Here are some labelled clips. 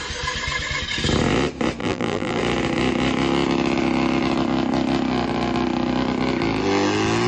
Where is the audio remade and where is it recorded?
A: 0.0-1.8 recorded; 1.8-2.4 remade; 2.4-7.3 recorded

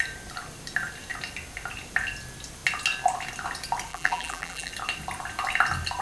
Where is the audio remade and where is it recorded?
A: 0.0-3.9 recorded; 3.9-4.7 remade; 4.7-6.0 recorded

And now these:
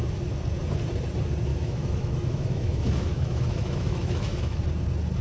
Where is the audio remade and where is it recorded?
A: 0.0-1.5 recorded; 1.5-4.6 remade; 4.6-5.2 recorded

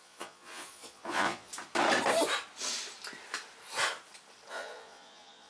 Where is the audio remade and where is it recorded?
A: 0.0-1.5 remade; 1.5-4.5 recorded; 4.5-5.5 remade